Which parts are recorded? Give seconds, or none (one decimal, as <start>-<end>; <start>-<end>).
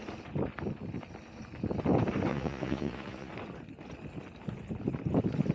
0.0-2.3; 3.3-5.5